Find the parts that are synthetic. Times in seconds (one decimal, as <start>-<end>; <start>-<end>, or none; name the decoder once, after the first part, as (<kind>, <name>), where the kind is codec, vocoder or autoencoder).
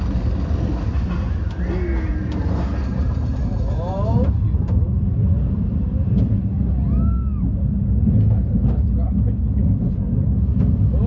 2.1-6.4 (vocoder, BigVGAN v2)